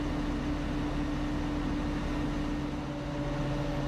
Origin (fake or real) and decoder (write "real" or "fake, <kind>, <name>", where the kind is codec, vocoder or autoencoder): real